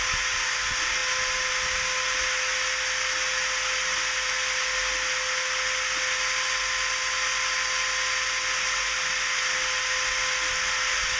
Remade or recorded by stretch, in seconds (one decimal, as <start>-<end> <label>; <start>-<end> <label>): 0.0-11.2 recorded